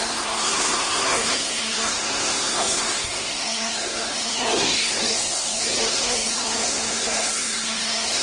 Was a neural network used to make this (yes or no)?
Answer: yes